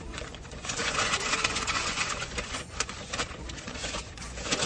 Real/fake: fake